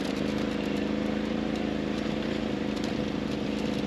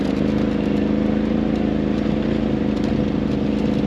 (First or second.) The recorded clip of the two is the second